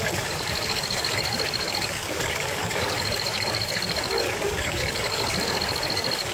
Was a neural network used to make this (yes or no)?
yes